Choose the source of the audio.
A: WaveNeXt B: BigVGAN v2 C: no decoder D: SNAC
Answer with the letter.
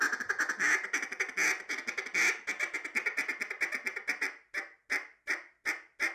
C